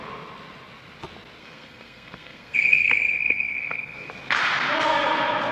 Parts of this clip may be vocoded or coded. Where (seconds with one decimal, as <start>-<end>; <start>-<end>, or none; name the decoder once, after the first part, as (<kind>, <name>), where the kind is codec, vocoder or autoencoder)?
1.4-4.1 (codec, SNAC)